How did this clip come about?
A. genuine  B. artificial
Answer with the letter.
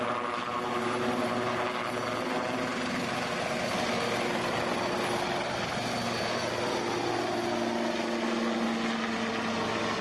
A